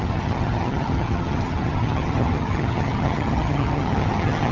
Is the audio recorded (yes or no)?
no